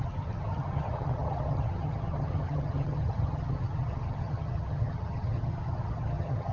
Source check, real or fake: fake